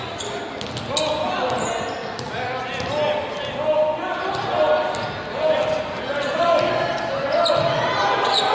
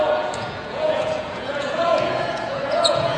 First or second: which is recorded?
first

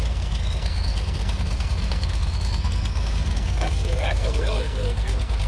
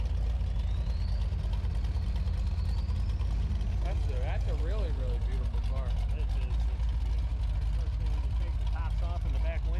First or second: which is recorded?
second